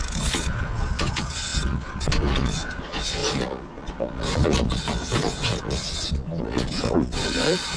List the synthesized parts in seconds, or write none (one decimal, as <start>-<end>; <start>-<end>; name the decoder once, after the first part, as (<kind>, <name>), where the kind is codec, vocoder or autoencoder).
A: 0.0-7.8 (vocoder, Vocos)